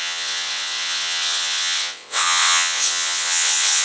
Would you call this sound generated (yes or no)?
yes